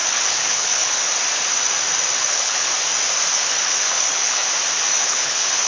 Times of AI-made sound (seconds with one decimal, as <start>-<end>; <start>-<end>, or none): 0.0-1.0; 2.2-2.7; 3.3-4.4; 4.9-5.7